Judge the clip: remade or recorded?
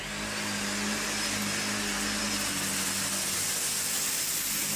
recorded